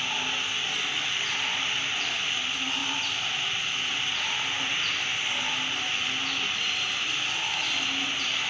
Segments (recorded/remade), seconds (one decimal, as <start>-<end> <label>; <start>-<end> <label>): 0.0-8.5 recorded